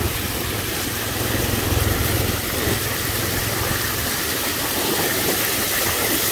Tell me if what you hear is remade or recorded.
remade